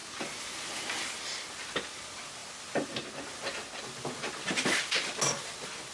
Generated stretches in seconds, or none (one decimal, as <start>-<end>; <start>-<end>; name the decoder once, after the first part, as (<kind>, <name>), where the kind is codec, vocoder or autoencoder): none